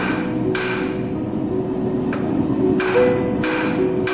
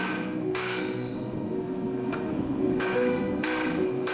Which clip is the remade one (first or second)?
second